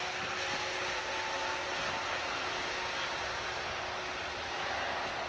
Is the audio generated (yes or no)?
no